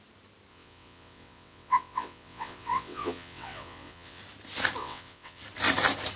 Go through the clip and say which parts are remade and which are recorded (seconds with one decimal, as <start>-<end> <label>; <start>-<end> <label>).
0.0-0.5 recorded; 0.5-4.2 remade; 4.2-4.8 recorded; 4.8-5.4 remade; 5.4-6.2 recorded